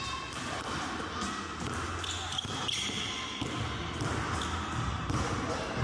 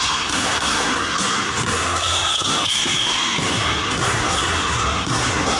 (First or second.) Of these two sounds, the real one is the first